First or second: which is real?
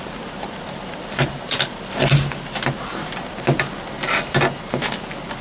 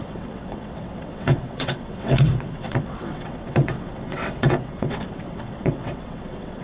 first